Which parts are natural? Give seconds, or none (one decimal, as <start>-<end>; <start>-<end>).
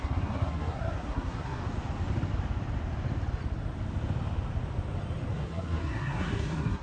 1.6-5.3